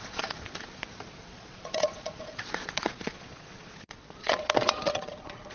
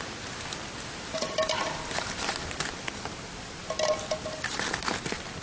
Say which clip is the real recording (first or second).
second